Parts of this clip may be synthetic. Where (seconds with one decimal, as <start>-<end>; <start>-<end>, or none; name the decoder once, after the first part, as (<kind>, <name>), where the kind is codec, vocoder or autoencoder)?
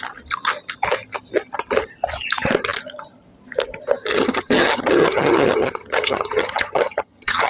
4.1-7.5 (vocoder, HiFi-GAN)